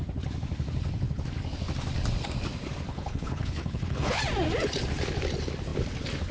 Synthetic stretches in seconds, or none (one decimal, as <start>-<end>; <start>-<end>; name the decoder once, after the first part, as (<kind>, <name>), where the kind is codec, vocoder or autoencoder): 2.9-4.2 (codec, HILCodec)